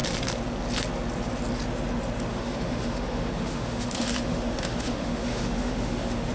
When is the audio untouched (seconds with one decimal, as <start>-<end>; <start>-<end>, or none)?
0.0-2.3